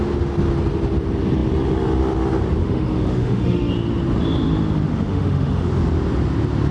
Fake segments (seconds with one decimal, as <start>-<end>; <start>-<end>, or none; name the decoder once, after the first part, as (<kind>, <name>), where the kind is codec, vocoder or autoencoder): 2.6-3.7 (autoencoder, DAC-VAE); 4.9-5.7